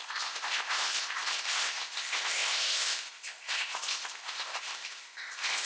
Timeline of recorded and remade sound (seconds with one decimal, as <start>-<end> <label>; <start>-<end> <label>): 0.0-5.7 remade

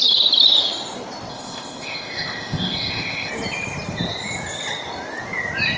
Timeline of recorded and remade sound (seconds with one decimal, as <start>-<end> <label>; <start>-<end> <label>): 0.0-1.3 recorded; 1.3-3.3 remade; 3.3-5.8 recorded